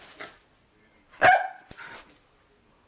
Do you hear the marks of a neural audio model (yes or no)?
no